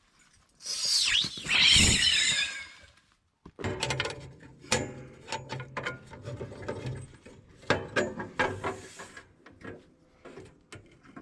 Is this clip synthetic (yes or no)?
no